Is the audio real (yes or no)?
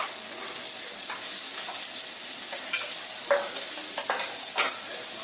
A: yes